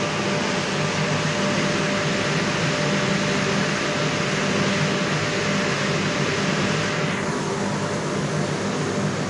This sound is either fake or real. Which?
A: real